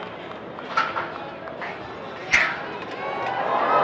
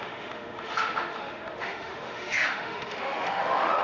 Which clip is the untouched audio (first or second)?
first